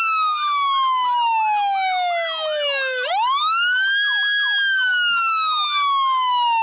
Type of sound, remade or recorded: recorded